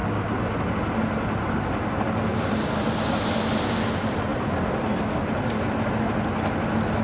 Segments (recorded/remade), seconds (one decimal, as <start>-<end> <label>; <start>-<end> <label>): 0.0-2.3 recorded; 2.3-3.2 remade; 3.2-4.3 recorded; 4.3-5.9 remade; 5.9-7.0 recorded